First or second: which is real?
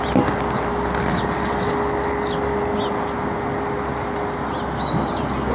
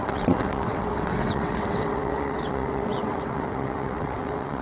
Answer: first